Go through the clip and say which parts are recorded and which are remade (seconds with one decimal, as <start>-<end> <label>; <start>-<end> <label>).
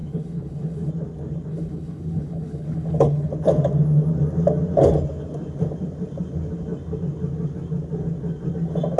0.0-0.9 remade; 0.9-1.5 recorded; 1.5-3.3 remade; 3.3-9.0 recorded